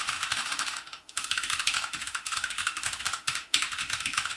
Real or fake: fake